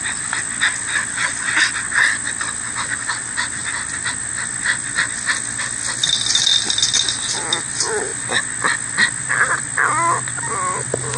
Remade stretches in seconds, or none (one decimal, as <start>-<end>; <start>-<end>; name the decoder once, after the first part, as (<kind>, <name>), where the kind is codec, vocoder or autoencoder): none